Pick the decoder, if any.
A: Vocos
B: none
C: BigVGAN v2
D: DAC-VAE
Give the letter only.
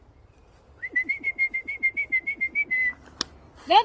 B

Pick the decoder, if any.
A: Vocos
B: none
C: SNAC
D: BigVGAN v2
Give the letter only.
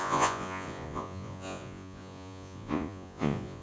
A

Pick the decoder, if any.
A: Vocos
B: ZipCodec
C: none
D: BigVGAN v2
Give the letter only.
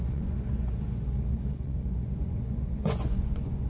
A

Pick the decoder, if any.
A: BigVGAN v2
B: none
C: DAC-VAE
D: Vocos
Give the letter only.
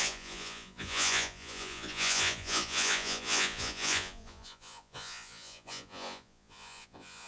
D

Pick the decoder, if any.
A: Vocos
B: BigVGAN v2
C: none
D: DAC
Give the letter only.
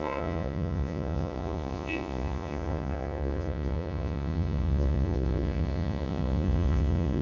A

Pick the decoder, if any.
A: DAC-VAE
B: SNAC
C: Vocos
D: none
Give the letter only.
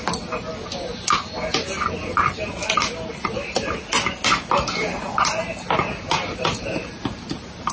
D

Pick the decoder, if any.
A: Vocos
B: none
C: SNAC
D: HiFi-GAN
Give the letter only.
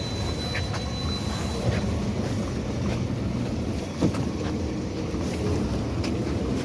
B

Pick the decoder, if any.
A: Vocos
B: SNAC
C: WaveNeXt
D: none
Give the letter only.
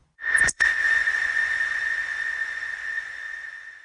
A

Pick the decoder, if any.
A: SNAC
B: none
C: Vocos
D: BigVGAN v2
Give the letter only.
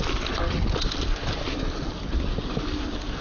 B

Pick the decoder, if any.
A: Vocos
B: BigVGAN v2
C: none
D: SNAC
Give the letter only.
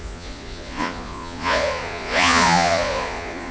A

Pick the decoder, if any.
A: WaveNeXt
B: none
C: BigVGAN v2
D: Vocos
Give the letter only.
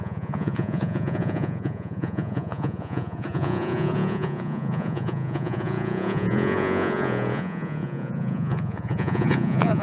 D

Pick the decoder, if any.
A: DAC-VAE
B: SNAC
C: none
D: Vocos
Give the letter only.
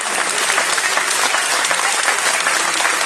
C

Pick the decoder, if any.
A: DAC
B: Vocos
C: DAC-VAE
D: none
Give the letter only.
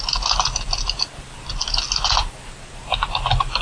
D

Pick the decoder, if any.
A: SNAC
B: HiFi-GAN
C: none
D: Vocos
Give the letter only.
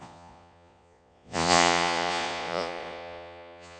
D